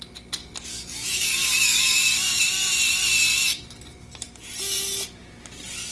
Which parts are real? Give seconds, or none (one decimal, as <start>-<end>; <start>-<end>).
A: 0.0-0.7; 2.4-5.9